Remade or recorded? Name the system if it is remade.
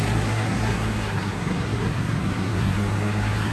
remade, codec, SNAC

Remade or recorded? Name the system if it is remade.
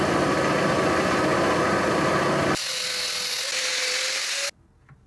recorded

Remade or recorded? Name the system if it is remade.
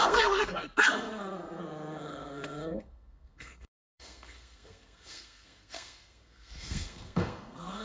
remade, codec, SNAC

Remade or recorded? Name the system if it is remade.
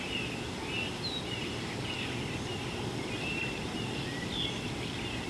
recorded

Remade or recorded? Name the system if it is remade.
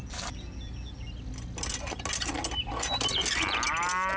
recorded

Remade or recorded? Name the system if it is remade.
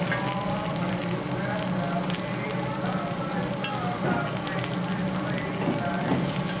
recorded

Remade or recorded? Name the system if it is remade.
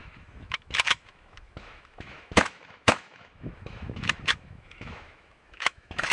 remade, autoencoder, DAC-VAE